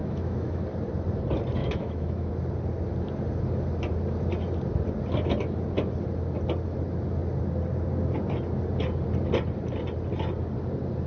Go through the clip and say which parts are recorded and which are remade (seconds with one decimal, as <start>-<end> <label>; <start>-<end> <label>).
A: 0.0-0.6 remade; 0.6-1.6 recorded; 1.6-2.3 remade; 2.3-11.1 recorded